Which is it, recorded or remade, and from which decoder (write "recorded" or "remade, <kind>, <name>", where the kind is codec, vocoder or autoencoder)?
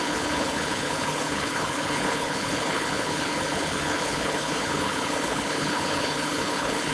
remade, codec, HILCodec